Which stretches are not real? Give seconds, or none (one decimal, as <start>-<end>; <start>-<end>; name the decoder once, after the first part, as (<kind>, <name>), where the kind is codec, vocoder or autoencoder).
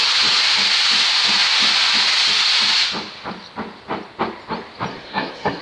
4.9-5.6 (codec, SNAC)